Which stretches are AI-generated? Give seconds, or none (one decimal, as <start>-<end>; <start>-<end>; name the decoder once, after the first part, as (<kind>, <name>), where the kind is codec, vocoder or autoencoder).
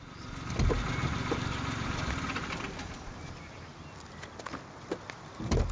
none